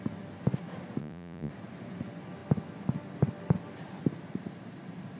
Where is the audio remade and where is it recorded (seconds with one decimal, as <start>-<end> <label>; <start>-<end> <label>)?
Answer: 0.0-1.0 recorded; 1.0-1.5 remade; 1.5-5.2 recorded